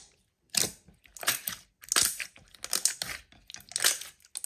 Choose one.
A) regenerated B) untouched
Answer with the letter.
B